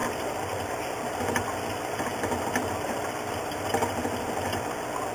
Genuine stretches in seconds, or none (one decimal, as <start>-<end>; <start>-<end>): 0.0-5.1